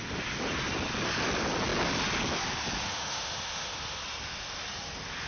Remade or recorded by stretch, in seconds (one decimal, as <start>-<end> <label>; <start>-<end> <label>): 0.0-2.8 recorded; 2.8-4.0 remade; 4.0-5.3 recorded